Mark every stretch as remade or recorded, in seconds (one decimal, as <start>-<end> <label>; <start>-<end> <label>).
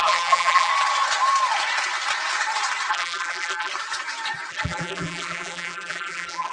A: 0.0-0.7 remade; 0.7-2.9 recorded; 2.9-3.7 remade; 3.7-4.5 recorded; 4.5-6.5 remade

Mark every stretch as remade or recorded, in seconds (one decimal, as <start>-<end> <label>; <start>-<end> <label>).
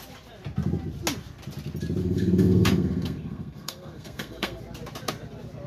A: 0.0-2.0 recorded; 2.0-4.6 remade; 4.6-5.7 recorded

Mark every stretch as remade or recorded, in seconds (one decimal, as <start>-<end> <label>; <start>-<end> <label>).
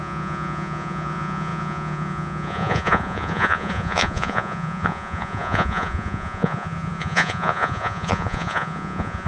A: 0.0-9.3 remade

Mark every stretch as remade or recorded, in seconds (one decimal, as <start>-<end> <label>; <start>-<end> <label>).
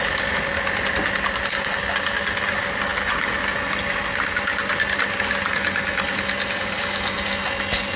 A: 0.0-8.0 recorded